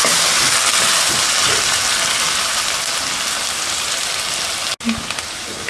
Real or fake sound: real